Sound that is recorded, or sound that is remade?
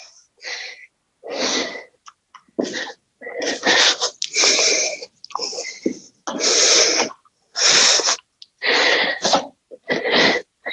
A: recorded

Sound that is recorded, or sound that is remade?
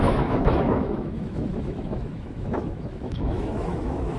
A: remade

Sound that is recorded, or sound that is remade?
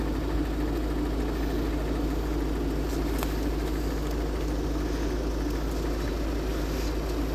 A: recorded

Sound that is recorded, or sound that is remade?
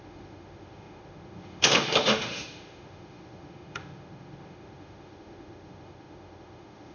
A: remade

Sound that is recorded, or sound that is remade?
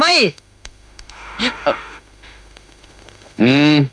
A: remade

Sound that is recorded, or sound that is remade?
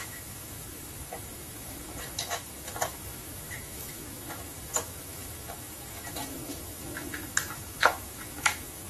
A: remade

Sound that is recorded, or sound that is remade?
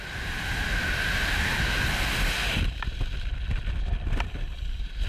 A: recorded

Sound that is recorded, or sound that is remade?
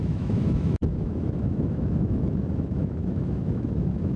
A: remade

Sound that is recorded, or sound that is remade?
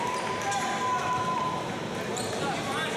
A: recorded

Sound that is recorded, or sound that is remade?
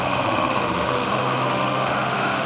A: remade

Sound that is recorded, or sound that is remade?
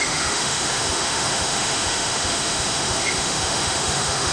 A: remade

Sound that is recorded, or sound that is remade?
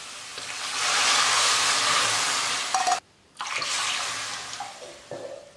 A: recorded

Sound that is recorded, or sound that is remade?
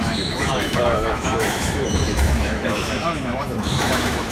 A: remade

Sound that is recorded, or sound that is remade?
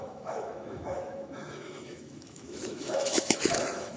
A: remade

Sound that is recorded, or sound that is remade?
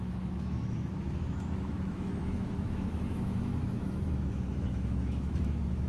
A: remade